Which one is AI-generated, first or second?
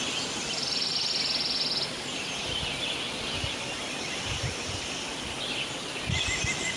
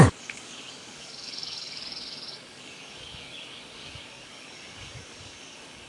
second